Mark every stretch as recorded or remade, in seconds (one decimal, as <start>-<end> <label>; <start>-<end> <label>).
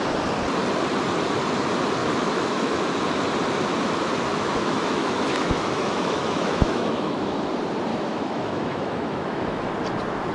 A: 0.0-2.0 recorded; 2.0-2.8 remade; 2.8-4.3 recorded; 4.3-7.5 remade; 7.5-7.9 recorded; 7.9-9.7 remade; 9.7-10.3 recorded